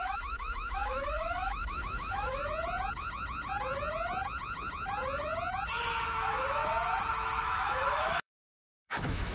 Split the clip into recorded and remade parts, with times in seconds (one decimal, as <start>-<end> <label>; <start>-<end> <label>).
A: 0.0-2.4 remade; 2.4-6.0 recorded; 6.0-6.6 remade; 6.6-7.4 recorded; 7.4-9.3 remade